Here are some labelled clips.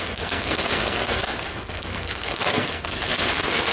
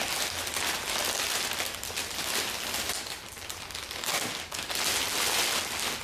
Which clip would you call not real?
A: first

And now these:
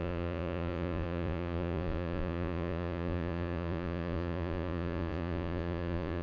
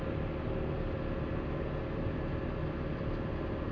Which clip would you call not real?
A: first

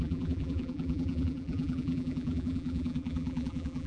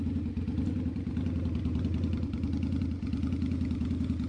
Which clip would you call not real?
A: first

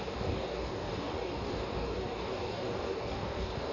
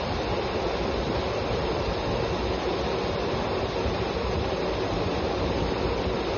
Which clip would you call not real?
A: first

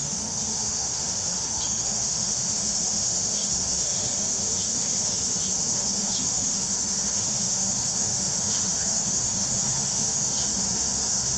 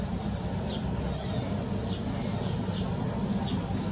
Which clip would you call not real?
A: first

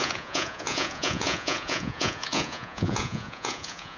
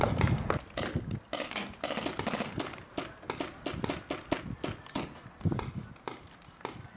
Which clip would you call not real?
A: first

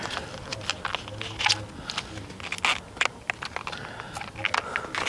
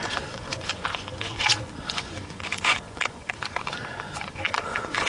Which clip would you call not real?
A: second